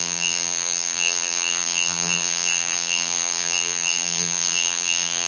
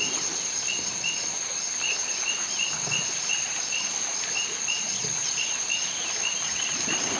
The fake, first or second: first